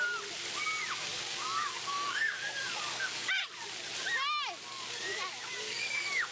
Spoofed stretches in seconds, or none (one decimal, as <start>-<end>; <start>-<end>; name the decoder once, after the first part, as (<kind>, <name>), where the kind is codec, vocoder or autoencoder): 1.1-3.3 (codec, DAC); 4.7-6.3